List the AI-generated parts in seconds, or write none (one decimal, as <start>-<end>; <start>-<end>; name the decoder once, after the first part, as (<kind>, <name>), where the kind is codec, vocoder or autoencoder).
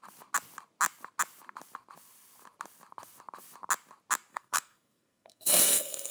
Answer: 4.3-6.1 (codec, SNAC)